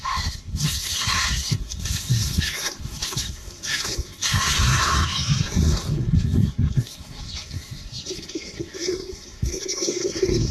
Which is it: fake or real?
fake